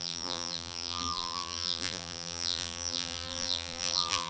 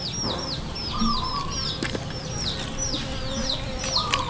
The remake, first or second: first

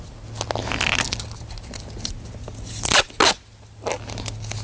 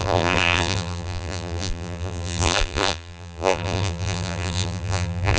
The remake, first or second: second